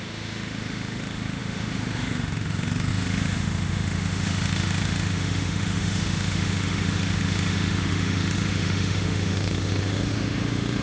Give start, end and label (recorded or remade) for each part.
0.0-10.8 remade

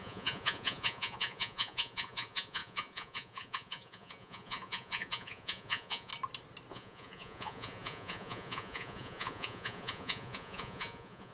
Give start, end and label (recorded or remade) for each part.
0.0-6.1 remade; 6.1-6.7 recorded; 6.7-11.3 remade

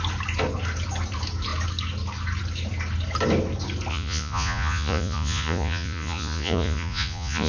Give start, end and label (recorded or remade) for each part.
0.0-3.9 recorded; 3.9-7.5 remade

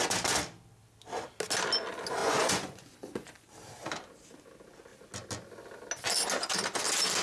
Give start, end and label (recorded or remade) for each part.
0.0-2.2 recorded; 2.2-3.5 remade; 3.5-7.2 recorded